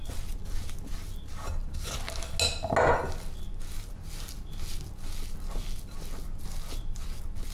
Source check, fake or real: real